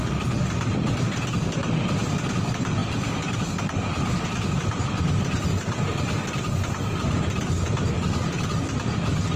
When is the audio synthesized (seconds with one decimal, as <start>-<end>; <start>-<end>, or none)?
none